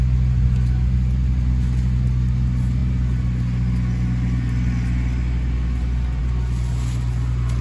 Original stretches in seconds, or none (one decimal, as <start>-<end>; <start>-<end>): 0.0-7.6